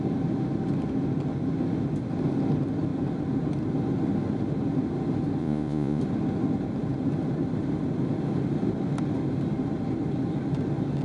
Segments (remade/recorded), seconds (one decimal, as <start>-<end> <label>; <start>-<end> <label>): 0.0-5.4 recorded; 5.4-6.0 remade; 6.0-11.0 recorded

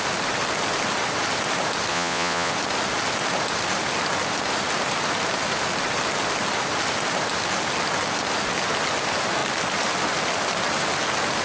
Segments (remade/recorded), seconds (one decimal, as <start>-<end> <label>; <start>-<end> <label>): 0.0-1.9 recorded; 1.9-2.5 remade; 2.5-11.4 recorded

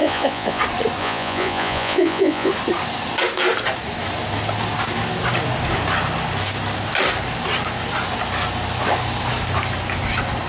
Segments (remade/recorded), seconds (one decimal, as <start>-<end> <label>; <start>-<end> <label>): 0.0-0.6 remade; 0.6-1.0 recorded; 1.0-2.5 remade; 2.5-10.5 recorded

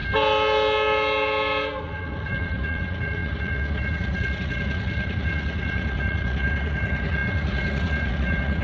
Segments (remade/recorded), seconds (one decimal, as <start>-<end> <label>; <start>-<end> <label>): 0.0-1.8 recorded; 1.8-8.6 remade